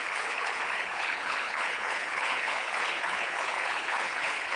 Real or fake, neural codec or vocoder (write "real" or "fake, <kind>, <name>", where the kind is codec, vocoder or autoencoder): fake, codec, HILCodec